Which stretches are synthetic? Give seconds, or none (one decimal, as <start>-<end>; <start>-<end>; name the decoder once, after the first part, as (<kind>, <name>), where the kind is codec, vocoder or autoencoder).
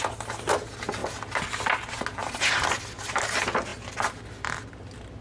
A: none